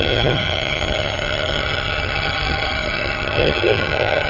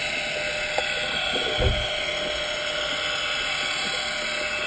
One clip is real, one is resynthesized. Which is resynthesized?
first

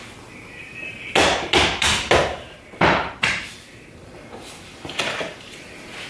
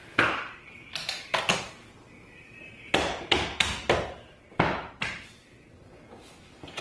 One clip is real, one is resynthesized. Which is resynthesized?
first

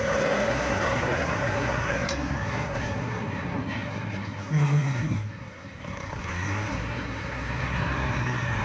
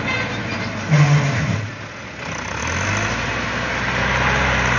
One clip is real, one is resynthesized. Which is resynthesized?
first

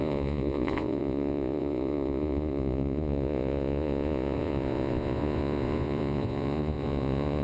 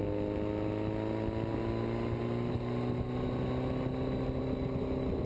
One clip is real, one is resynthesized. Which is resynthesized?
first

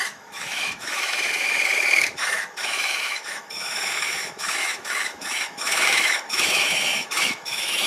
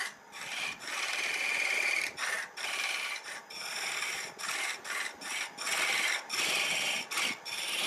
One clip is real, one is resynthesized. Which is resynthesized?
first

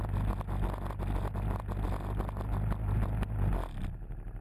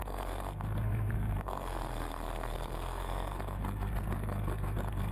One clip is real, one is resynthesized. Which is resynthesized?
second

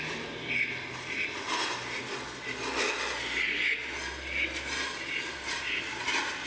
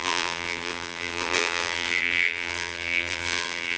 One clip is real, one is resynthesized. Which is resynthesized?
second